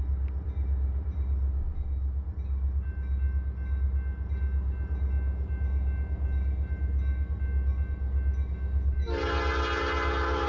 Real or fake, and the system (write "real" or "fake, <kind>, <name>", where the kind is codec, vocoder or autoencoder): real